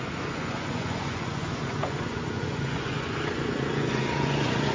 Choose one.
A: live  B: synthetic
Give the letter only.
B